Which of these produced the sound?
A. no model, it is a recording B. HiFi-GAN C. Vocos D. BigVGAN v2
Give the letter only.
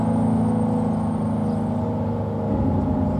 A